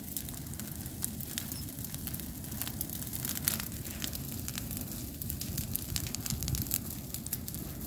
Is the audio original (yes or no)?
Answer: yes